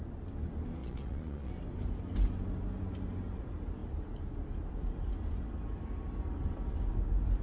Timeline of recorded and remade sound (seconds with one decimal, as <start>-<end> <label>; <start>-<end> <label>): 0.0-0.8 recorded; 0.8-1.5 remade; 1.5-7.4 recorded